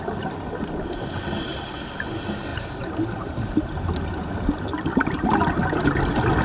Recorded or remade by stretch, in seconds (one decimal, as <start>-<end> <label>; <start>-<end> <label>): 0.0-2.5 recorded; 2.5-3.5 remade; 3.5-6.4 recorded